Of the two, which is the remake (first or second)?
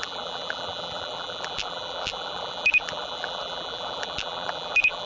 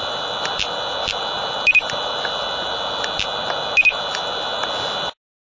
first